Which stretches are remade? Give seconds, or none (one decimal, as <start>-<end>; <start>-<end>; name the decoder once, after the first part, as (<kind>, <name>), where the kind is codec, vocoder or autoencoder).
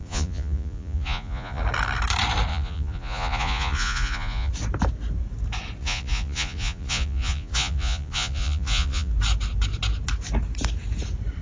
0.0-1.6 (vocoder, Vocos); 2.5-4.5; 5.8-9.1